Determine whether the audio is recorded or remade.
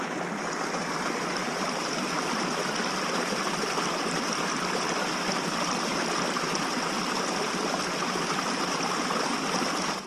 recorded